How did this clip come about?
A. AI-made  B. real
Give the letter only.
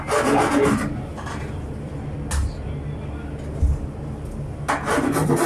B